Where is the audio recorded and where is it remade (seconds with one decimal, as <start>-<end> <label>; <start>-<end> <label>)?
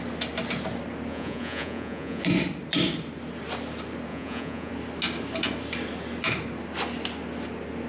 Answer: 0.0-1.1 recorded; 1.1-2.2 remade; 2.2-4.1 recorded; 4.1-4.7 remade; 4.7-7.9 recorded